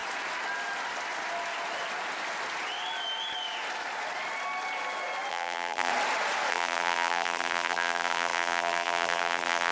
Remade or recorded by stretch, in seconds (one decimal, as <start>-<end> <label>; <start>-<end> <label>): 0.0-5.3 recorded; 5.3-5.9 remade; 5.9-6.5 recorded; 6.5-9.7 remade